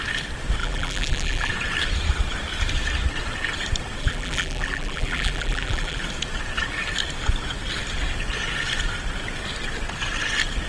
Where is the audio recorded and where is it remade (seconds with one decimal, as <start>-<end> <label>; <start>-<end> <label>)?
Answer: 0.0-0.6 recorded; 0.6-1.5 remade; 1.5-4.0 recorded; 4.0-6.0 remade; 6.0-10.7 recorded